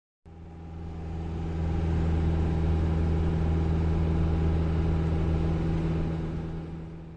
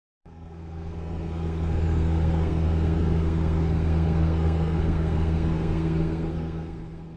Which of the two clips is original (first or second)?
first